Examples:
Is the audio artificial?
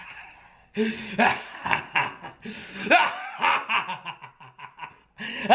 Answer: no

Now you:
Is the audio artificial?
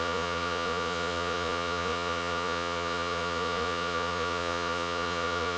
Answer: yes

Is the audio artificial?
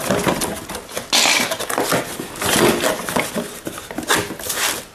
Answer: no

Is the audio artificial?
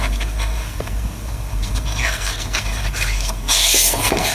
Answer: yes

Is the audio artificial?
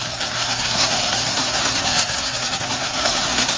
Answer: yes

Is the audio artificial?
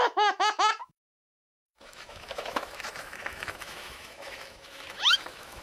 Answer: yes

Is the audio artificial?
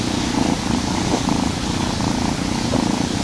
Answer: no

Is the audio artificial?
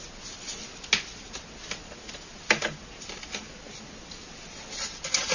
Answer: no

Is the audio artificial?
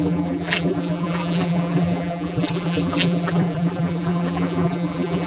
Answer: yes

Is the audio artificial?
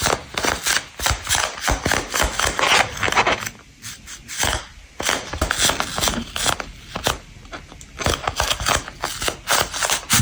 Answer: no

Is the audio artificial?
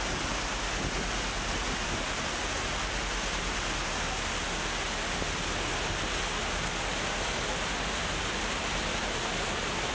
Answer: no